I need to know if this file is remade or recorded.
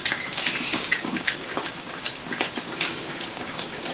remade